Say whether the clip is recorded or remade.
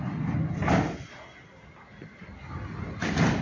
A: recorded